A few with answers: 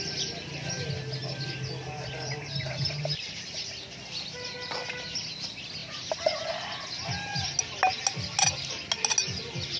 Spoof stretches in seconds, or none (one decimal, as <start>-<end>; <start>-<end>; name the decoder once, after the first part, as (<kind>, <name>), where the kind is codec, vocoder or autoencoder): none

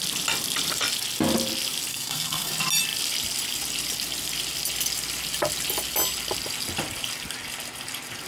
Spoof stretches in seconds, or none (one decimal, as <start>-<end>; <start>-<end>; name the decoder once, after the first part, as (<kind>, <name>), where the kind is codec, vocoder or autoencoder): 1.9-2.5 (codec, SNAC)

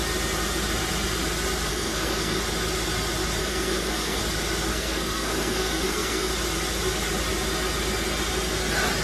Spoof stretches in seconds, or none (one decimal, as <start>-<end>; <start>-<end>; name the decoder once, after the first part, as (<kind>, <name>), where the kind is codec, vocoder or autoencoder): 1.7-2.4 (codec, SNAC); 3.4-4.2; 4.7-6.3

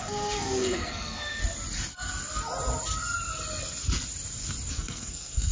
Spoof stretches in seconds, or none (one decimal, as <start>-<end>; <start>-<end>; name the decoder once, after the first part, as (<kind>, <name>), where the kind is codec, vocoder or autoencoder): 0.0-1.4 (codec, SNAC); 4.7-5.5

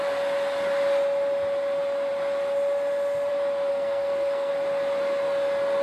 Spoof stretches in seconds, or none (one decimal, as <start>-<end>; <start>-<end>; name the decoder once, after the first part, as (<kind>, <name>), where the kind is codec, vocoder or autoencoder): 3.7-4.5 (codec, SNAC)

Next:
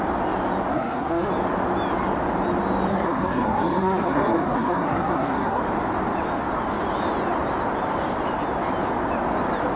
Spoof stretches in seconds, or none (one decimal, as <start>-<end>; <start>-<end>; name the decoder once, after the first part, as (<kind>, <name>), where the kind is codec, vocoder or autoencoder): 0.7-1.3 (codec, SNAC); 2.9-5.6

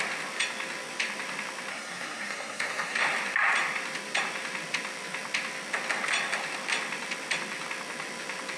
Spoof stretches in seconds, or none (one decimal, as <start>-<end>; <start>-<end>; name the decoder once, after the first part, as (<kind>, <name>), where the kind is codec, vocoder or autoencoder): 1.7-3.0 (codec, SNAC)